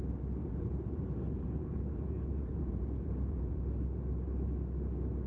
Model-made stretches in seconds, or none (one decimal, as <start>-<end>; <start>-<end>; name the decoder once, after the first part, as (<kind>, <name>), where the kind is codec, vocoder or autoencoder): 0.4-3.6 (vocoder, Vocos)